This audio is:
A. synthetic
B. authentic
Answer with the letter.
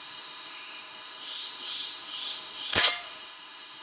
A